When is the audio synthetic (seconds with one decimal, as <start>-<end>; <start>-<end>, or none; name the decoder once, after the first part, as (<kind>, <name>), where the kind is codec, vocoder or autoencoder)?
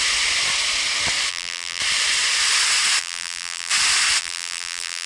1.3-1.8 (vocoder, BigVGAN v2); 3.0-3.7; 4.2-5.1